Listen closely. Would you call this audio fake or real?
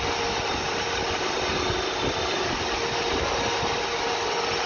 real